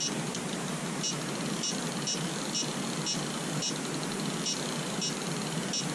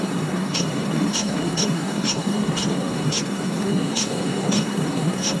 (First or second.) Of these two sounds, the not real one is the second